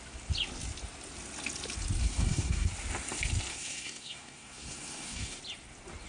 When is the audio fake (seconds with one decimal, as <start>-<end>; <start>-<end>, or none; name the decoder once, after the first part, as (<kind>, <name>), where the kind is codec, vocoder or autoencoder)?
2.0-2.7 (codec, SNAC); 3.5-5.4